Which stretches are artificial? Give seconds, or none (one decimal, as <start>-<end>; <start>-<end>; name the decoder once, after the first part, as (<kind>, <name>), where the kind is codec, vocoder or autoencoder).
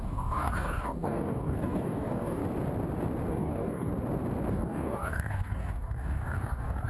0.0-2.4 (codec, DAC); 3.3-3.9; 4.5-6.9